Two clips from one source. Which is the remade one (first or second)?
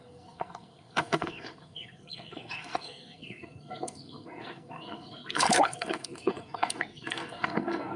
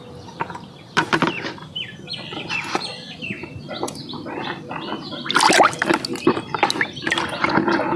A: first